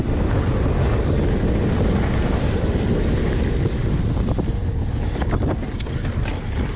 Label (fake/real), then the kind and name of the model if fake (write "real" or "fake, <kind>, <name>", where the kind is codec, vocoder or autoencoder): real